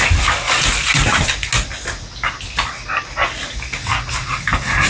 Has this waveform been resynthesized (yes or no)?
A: no